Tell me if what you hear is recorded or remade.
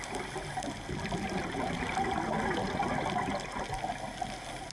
recorded